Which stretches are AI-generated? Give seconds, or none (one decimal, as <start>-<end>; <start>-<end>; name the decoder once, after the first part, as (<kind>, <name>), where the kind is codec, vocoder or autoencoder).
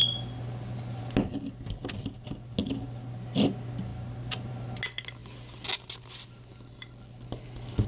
none